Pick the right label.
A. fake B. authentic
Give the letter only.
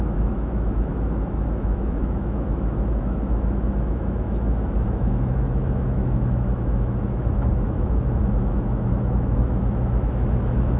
A